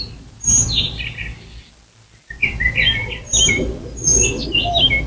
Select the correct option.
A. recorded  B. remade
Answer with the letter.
A